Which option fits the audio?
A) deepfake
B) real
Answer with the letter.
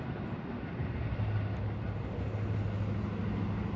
B